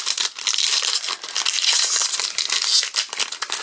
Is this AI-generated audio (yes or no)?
no